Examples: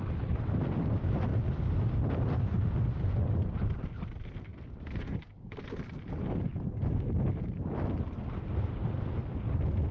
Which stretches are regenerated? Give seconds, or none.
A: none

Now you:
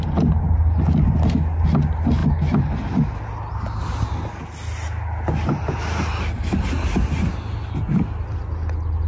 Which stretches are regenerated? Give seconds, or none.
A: none

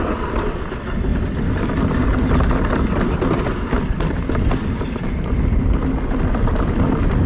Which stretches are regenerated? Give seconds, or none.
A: none

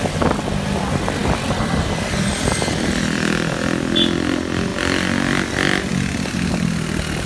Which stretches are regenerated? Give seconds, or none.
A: none

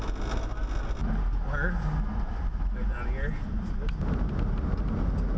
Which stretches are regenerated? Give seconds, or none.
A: none

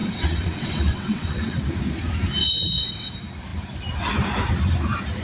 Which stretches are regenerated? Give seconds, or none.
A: 0.0-1.6 (vocoder, WaveNeXt); 2.4-3.1